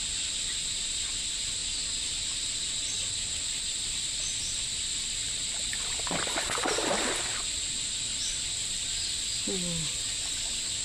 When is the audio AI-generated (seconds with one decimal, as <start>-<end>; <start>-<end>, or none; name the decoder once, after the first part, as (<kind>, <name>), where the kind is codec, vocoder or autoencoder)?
none